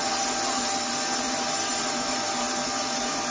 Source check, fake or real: real